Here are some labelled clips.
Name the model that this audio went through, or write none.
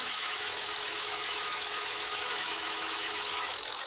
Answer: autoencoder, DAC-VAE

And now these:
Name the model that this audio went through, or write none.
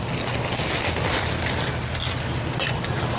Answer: none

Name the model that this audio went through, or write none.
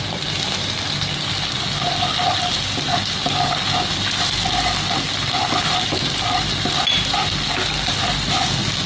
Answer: none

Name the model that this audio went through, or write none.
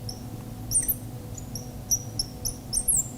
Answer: none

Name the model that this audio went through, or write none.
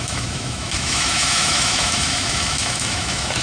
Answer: autoencoder, DAC-VAE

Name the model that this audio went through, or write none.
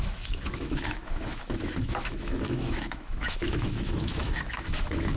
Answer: autoencoder, DAC-VAE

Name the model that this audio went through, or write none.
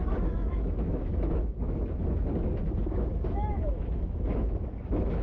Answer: autoencoder, DAC-VAE